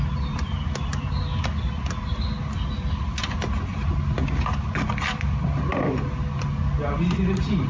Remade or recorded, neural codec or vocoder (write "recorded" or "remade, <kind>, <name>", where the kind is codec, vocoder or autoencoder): recorded